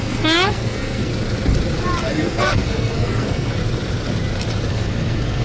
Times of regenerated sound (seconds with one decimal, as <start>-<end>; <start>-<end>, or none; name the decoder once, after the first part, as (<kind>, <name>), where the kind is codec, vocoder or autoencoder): 0.0-1.1 (codec, SNAC); 2.0-3.6; 4.7-5.4